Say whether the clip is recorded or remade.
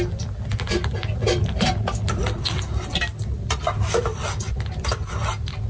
recorded